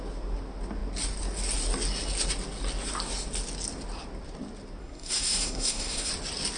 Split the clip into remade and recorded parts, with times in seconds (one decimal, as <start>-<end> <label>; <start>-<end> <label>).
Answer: 0.0-4.8 recorded; 4.8-6.1 remade; 6.1-6.6 recorded